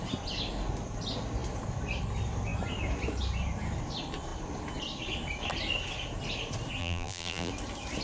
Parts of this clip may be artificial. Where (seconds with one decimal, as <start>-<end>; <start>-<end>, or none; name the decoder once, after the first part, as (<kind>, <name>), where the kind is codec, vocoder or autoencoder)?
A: 6.8-7.5 (vocoder, BigVGAN v2)